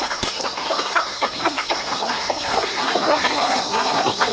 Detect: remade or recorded remade